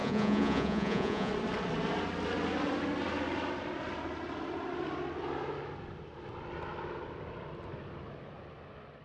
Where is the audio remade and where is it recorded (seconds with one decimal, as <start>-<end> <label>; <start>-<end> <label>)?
0.0-1.3 remade; 1.3-9.0 recorded